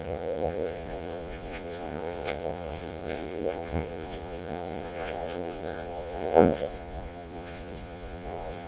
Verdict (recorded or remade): remade